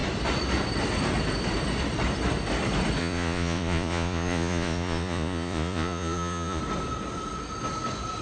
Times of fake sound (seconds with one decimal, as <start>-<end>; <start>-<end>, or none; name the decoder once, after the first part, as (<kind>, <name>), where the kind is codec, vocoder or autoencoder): 3.0-6.6 (vocoder, Vocos)